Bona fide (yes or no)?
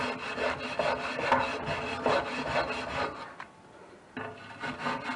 yes